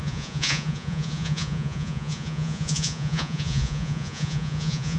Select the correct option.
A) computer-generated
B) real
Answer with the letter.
A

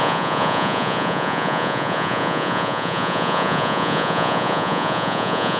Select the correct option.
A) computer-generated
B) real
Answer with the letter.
A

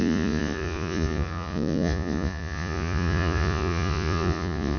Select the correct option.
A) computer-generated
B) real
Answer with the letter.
A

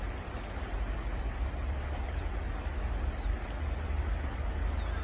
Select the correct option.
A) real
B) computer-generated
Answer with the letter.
A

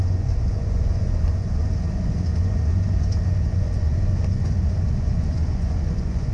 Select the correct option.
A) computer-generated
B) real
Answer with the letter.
A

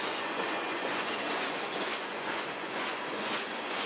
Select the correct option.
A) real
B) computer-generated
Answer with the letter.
B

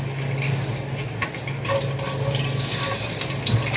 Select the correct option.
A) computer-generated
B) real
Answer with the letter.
B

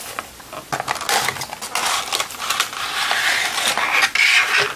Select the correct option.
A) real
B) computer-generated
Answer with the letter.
A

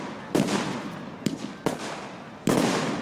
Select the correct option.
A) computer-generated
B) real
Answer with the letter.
B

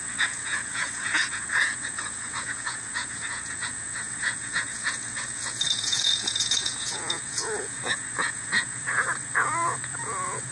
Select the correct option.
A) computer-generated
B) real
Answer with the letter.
A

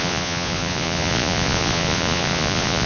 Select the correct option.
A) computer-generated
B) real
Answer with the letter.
A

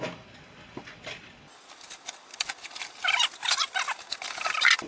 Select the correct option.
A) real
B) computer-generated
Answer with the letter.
A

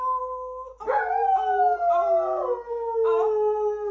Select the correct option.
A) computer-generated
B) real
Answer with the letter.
B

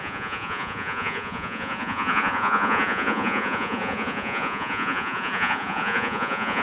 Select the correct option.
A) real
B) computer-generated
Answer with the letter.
B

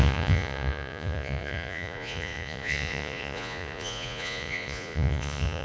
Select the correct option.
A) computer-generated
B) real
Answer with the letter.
A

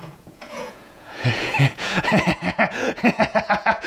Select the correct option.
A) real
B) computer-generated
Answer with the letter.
B